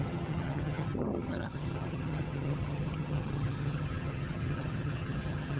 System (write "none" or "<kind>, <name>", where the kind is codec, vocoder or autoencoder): vocoder, HiFi-GAN